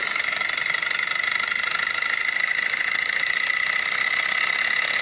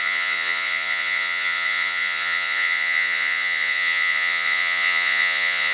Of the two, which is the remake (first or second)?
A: second